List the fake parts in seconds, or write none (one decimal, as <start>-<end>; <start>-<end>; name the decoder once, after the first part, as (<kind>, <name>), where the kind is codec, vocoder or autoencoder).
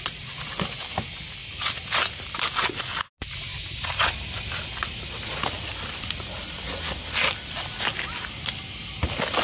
1.4-2.5 (vocoder, BigVGAN v2); 3.5-4.6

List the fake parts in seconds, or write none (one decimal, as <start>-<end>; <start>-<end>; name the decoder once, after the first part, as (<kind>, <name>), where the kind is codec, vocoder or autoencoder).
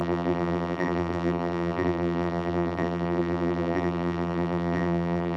0.0-5.4 (vocoder, BigVGAN v2)